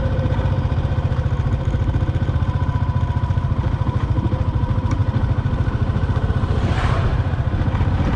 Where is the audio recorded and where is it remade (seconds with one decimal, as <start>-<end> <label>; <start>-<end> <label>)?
0.0-8.2 remade